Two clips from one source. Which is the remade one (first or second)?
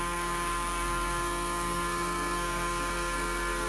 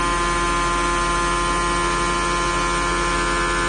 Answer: first